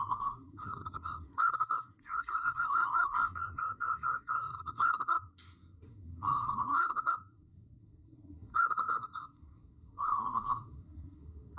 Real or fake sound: fake